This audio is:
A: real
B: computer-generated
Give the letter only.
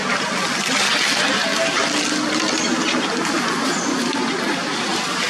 A